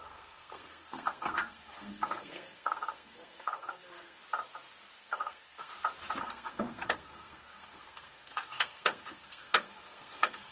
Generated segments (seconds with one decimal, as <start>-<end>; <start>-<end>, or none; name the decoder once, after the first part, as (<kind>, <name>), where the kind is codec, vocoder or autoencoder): 0.0-4.2 (codec, SNAC); 5.0-5.7; 6.2-10.5